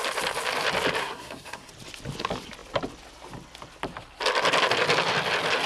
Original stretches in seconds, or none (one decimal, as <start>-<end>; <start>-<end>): 0.0-1.0; 1.7-5.7